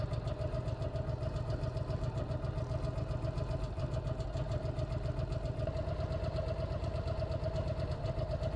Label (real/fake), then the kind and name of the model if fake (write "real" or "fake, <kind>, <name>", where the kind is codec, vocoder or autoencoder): real